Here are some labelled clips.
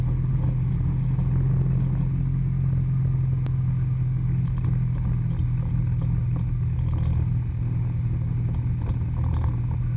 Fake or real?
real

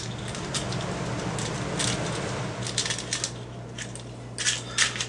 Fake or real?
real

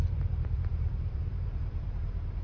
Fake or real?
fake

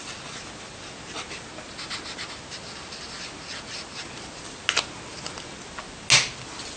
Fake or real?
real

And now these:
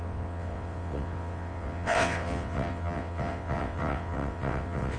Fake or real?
fake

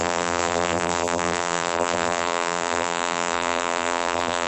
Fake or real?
fake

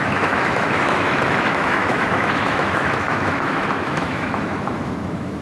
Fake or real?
fake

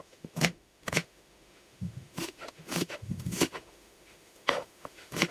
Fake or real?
fake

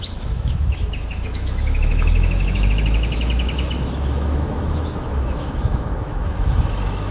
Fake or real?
fake